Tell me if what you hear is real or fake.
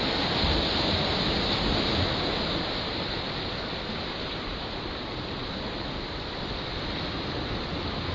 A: real